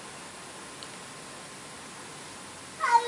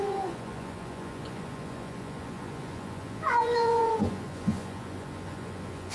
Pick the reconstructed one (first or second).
second